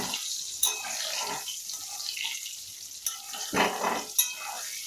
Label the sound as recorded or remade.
recorded